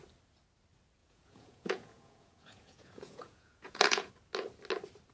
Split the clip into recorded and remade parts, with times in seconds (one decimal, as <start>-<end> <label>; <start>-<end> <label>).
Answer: 0.0-1.0 recorded; 1.0-4.1 remade; 4.1-5.1 recorded